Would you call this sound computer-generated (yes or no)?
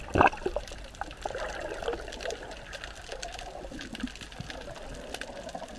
no